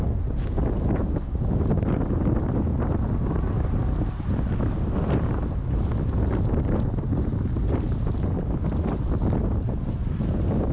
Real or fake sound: real